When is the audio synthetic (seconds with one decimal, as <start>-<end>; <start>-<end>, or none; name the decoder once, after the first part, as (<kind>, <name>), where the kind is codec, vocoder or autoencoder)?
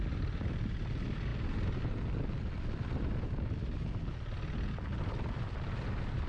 none